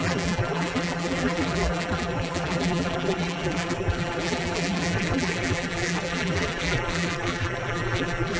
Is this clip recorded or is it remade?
remade